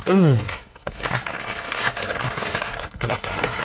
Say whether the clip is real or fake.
fake